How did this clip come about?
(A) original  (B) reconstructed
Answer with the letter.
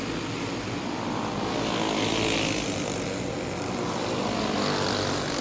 A